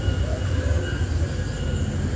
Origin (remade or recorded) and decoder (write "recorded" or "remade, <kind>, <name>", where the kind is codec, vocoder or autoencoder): recorded